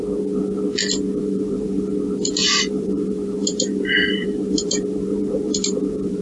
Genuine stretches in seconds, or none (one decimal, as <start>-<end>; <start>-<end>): 0.0-1.2; 1.9-2.4